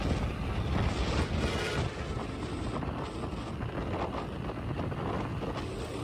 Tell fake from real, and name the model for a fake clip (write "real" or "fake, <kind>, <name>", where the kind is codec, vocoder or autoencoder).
real